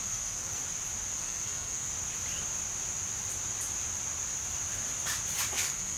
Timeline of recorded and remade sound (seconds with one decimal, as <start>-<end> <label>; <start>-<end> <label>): 0.0-0.6 remade; 0.6-1.2 recorded; 1.2-1.9 remade; 1.9-5.5 recorded; 5.5-6.0 remade